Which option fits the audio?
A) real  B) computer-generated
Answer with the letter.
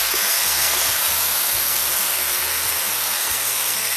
B